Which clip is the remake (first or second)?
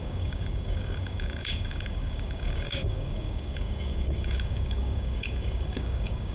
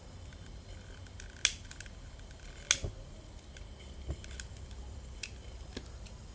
first